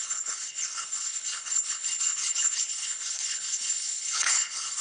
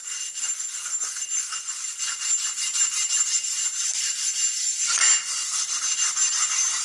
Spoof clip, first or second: first